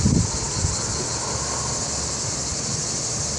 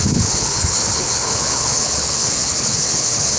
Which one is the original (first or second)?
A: first